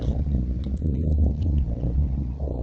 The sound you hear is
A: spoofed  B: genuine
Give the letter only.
A